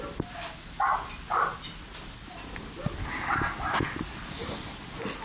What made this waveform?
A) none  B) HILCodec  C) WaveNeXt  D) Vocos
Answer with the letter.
A